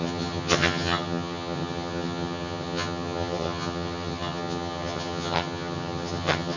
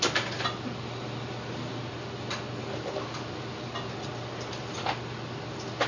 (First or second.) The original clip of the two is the second